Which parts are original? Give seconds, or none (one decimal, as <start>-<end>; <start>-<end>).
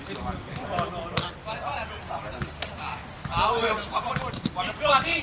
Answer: 0.0-5.2